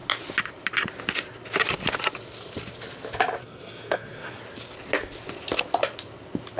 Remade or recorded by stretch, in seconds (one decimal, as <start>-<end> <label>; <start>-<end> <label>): 0.0-3.4 recorded; 3.4-4.4 remade; 4.4-6.6 recorded